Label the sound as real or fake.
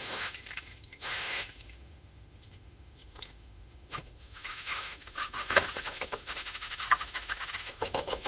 fake